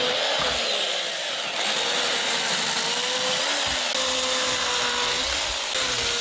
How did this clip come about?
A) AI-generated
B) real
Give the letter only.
B